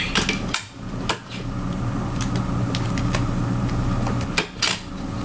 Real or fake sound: real